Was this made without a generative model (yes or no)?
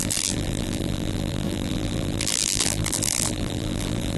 no